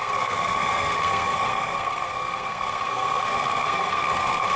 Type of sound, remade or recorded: remade